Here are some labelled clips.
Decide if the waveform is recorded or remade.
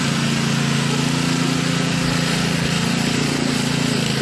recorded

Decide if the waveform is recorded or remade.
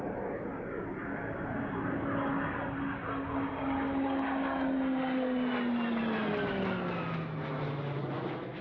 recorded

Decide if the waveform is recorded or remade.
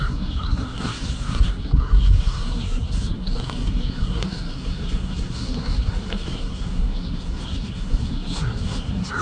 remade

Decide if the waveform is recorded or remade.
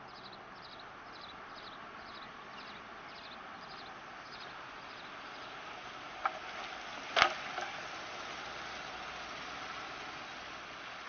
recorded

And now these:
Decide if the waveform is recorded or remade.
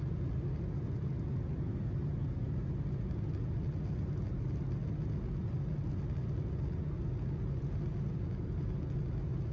recorded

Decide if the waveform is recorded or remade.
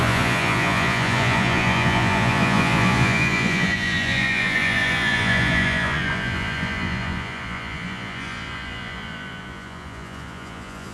remade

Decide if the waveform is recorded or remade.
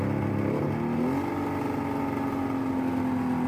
recorded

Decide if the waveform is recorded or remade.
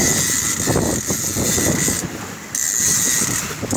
recorded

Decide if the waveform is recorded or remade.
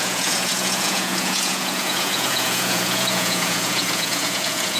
remade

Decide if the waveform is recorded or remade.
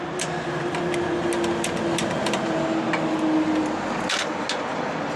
recorded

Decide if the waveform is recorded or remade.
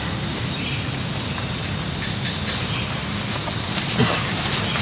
recorded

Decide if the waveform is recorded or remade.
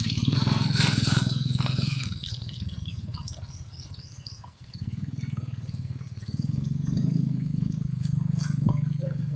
remade